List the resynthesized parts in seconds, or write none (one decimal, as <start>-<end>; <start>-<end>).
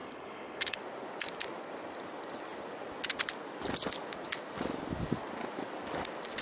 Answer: 0.0-0.8